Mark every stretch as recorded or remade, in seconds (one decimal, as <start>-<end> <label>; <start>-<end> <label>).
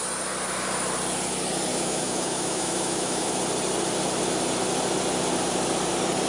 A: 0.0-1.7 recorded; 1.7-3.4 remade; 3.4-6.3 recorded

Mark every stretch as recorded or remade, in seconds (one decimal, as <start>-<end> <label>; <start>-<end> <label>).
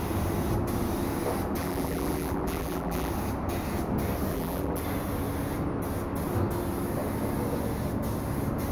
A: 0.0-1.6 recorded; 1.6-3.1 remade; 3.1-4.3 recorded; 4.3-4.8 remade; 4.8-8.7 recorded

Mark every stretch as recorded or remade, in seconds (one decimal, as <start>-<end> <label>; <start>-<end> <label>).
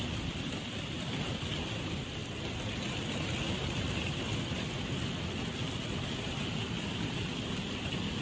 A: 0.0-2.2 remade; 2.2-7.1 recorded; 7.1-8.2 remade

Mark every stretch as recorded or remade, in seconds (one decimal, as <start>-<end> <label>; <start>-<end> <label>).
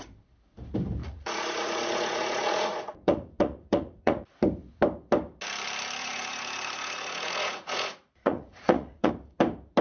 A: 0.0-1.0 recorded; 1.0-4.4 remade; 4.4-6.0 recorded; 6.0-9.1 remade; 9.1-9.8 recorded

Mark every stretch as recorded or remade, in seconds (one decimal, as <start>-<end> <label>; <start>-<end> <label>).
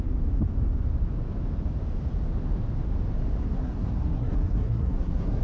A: 0.0-3.4 recorded; 3.4-5.4 remade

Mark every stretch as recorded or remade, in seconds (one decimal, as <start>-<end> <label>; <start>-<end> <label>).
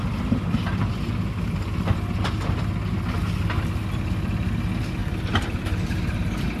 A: 0.0-5.0 recorded; 5.0-6.6 remade